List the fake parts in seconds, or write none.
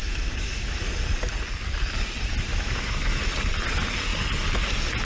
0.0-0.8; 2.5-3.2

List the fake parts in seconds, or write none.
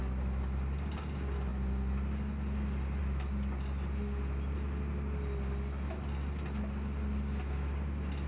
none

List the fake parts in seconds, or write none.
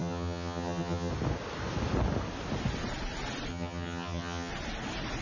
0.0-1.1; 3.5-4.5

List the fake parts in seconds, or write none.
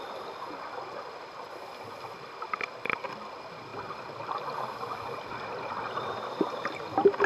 none